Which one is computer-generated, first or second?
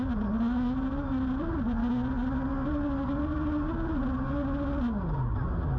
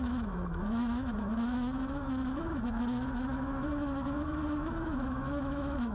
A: second